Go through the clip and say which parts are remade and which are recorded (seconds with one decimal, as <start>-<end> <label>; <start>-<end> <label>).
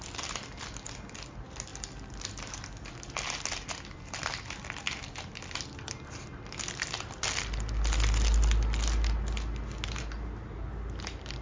0.0-11.4 recorded